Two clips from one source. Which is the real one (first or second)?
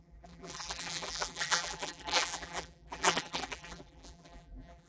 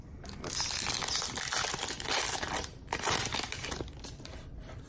second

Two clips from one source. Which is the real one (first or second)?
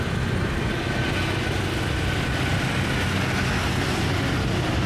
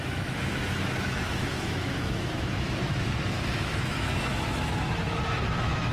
first